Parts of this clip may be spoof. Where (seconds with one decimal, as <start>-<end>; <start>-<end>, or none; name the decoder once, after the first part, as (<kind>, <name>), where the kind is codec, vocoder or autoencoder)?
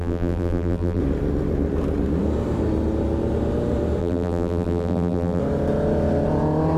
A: 0.0-1.0 (vocoder, BigVGAN v2); 4.0-5.4